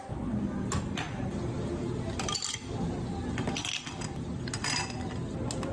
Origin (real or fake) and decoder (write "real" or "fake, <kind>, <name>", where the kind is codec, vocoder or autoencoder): real